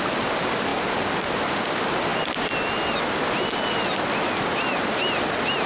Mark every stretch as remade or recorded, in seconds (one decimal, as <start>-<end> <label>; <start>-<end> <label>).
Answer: 0.0-5.7 recorded